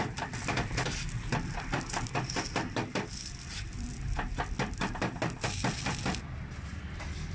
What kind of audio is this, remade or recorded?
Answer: remade